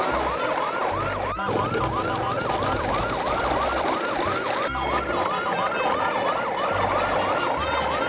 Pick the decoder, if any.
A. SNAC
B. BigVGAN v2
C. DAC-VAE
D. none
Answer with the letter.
D